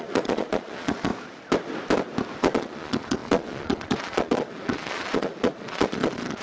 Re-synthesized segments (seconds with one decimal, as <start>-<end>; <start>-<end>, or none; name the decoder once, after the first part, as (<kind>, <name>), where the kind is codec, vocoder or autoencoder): 0.0-1.1 (vocoder, Vocos); 2.4-6.4